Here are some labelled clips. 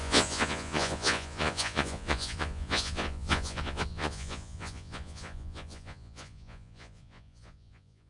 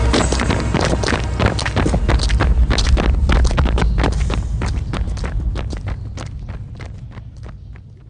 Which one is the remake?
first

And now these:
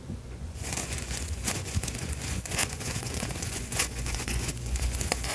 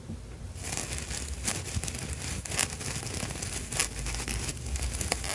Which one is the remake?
first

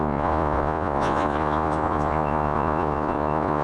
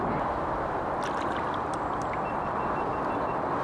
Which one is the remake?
first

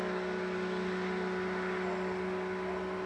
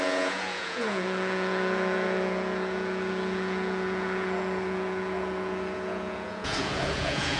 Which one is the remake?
second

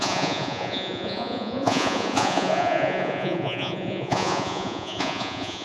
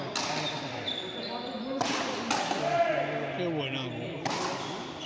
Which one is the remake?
first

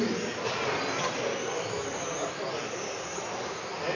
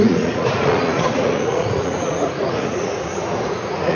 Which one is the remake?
second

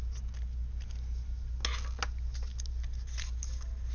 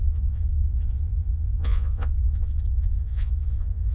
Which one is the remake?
second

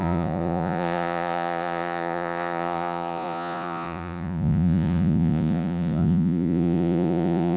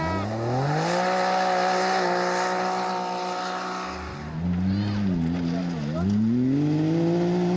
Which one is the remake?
first